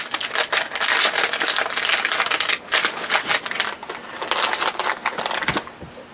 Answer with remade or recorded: recorded